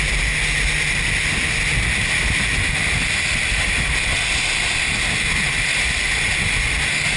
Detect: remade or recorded recorded